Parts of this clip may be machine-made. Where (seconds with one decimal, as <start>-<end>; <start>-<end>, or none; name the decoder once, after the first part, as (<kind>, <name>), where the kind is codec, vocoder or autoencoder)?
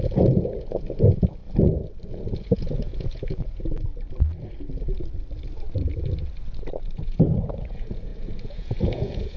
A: 0.0-1.4 (vocoder, Vocos); 2.1-3.9; 6.8-9.4